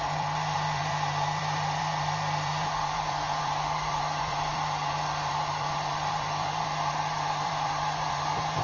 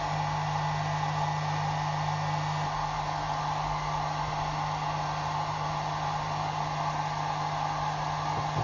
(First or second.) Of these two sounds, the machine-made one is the first